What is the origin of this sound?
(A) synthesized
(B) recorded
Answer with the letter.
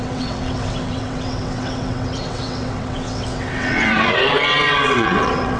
A